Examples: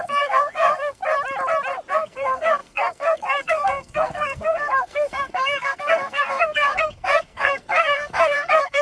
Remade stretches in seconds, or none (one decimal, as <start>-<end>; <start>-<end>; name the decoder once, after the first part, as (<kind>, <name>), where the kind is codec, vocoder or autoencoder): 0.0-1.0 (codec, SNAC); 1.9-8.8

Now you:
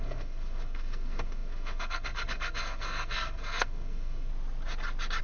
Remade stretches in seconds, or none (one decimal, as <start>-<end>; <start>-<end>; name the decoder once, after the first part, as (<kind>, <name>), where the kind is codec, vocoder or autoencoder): 0.0-4.3 (codec, SNAC)

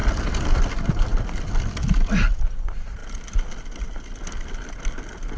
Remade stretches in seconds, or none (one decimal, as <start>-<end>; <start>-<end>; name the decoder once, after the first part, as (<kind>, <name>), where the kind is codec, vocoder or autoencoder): 3.0-4.9 (vocoder, BigVGAN v2)

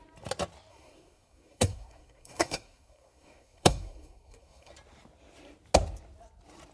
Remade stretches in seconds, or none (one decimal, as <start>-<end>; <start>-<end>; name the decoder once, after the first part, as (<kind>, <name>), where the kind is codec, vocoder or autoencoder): 0.7-4.7 (codec, SNAC)

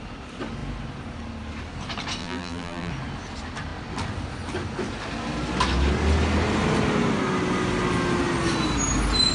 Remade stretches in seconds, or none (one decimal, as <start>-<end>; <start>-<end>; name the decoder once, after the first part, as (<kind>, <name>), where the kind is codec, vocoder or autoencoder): 2.2-2.9 (vocoder, BigVGAN v2)

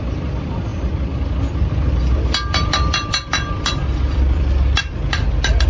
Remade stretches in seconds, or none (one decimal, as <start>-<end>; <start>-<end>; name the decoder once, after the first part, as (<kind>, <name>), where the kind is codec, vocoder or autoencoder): 0.0-5.7 (vocoder, BigVGAN v2)

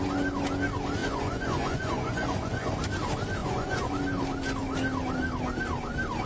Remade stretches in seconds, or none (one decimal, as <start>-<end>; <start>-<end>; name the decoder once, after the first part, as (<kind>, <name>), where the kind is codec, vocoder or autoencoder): 1.0-2.7 (vocoder, Vocos); 3.4-3.9